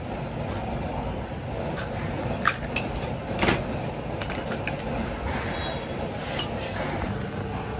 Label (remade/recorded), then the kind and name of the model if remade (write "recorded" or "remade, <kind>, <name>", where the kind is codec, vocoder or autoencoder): recorded